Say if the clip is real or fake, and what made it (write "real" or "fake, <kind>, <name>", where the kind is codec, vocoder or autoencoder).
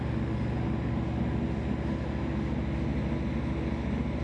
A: real